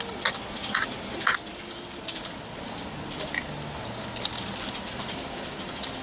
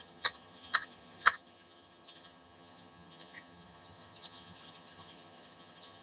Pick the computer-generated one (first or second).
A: second